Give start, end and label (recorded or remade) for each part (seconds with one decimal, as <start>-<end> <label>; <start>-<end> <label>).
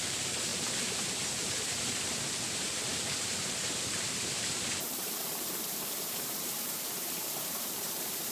0.0-8.3 remade